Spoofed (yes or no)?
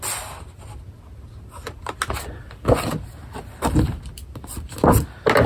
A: no